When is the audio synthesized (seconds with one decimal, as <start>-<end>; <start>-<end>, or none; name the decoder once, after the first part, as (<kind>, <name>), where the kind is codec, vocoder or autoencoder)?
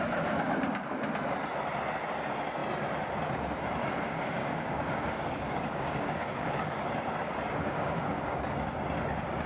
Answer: 3.8-6.9 (codec, DAC); 7.6-8.4